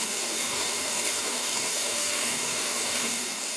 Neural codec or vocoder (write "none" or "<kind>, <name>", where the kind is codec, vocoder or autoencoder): codec, DAC